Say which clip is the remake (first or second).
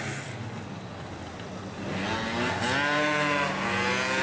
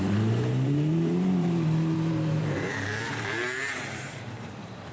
second